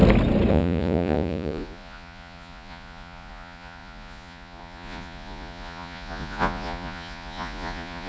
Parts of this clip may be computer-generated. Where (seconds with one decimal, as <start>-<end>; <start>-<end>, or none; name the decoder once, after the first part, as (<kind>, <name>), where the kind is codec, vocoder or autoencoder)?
0.5-8.1 (vocoder, Vocos)